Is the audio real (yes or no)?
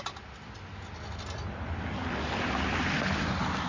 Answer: yes